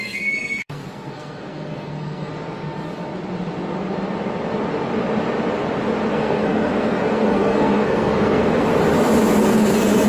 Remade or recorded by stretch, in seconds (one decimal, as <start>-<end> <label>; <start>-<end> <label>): 0.0-2.3 remade; 2.3-6.1 recorded; 6.1-8.7 remade; 8.7-9.4 recorded; 9.4-10.1 remade